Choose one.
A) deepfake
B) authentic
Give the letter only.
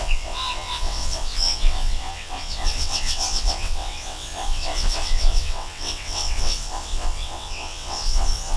A